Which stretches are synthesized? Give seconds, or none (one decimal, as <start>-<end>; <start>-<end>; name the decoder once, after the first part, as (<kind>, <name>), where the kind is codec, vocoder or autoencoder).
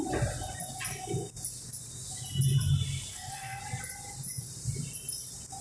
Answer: 3.1-3.6 (codec, SNAC)